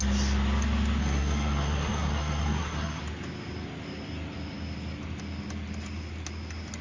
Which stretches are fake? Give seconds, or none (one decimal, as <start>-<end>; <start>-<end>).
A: 1.0-3.0